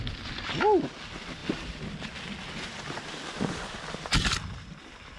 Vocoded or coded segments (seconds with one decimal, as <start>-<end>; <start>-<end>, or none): none